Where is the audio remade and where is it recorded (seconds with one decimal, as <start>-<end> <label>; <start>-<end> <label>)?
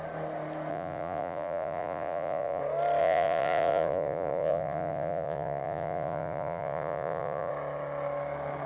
0.0-0.7 recorded; 0.7-2.6 remade; 2.6-3.0 recorded; 3.0-7.5 remade; 7.5-8.7 recorded